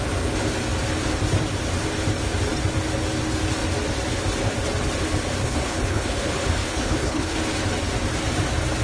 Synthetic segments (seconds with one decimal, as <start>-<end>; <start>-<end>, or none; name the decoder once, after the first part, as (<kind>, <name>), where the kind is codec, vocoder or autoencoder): 5.4-7.4 (codec, HILCodec)